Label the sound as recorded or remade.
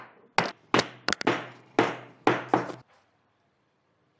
recorded